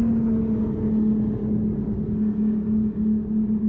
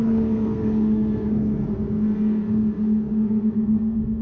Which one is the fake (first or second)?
second